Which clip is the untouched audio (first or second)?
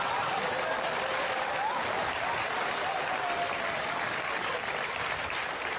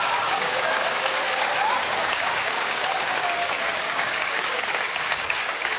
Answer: first